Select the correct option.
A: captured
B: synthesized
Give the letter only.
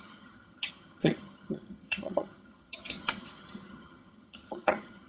B